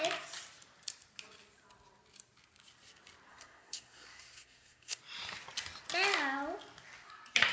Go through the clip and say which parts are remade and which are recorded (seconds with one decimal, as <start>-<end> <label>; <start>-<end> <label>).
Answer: 0.0-3.3 recorded; 3.3-5.0 remade; 5.0-7.5 recorded